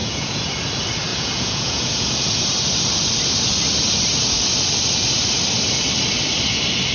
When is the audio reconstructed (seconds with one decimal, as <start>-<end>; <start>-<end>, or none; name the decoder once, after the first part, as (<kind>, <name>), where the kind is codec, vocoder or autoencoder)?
0.0-0.5 (vocoder, Vocos); 1.1-2.4